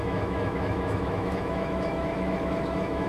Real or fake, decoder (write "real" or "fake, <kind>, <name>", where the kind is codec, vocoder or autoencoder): fake, autoencoder, DAC-VAE